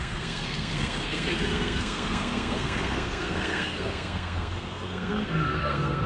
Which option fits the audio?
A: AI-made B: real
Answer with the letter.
A